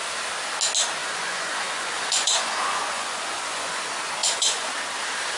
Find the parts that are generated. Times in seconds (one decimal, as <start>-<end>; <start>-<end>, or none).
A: 1.0-3.8; 4.2-4.7